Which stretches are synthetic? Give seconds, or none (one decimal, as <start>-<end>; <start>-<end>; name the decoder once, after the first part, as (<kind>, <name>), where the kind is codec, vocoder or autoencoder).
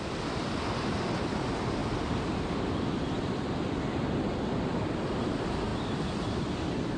1.8-5.3 (vocoder, BigVGAN v2)